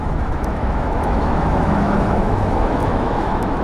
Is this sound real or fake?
fake